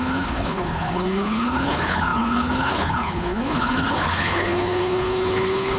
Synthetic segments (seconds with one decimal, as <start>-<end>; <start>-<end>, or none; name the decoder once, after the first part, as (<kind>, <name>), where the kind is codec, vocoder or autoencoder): 0.0-5.8 (codec, HILCodec)